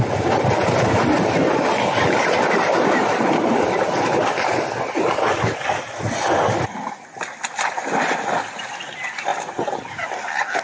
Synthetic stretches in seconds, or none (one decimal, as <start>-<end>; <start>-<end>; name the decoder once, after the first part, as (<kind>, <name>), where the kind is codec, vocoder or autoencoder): none